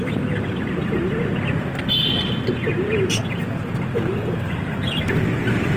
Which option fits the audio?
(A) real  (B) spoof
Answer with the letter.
A